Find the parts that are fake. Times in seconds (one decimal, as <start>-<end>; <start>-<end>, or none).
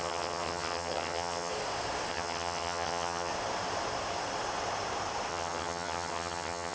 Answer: 0.0-1.5; 2.1-3.3; 5.3-6.7